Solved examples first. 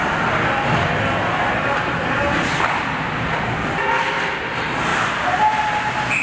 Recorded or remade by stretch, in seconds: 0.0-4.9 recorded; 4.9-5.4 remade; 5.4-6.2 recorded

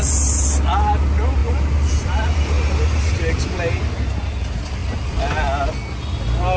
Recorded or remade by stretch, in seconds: 0.0-1.4 recorded; 1.4-3.4 remade; 3.4-6.6 recorded

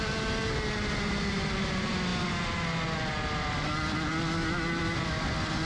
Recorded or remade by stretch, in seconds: 0.0-5.7 recorded

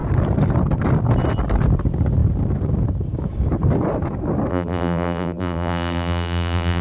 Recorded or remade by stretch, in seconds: 0.0-4.5 recorded; 4.5-6.8 remade

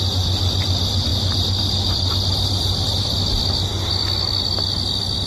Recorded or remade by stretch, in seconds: 0.0-5.3 recorded

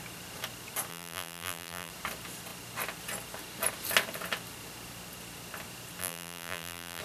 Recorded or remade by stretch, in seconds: 0.0-0.9 recorded; 0.9-1.9 remade; 1.9-6.0 recorded; 6.0-7.0 remade

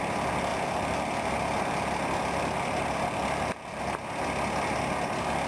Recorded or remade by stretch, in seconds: 0.0-0.5 recorded; 0.5-3.8 remade; 3.8-5.5 recorded